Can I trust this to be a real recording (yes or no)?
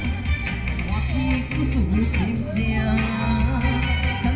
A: yes